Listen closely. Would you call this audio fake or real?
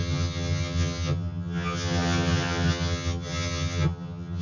fake